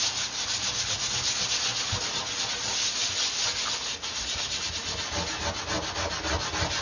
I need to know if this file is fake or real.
real